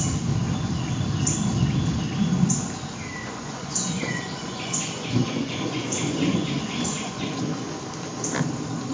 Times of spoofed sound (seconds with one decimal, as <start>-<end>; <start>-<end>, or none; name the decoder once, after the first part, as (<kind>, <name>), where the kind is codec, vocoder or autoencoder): 3.2-7.8 (vocoder, Vocos)